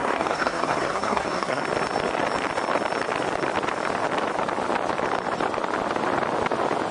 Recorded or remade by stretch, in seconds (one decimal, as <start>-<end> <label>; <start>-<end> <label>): 0.0-1.6 remade; 1.6-6.9 recorded